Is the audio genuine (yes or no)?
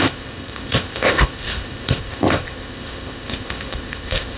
no